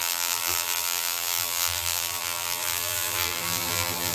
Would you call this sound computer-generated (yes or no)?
yes